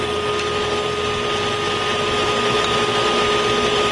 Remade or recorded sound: recorded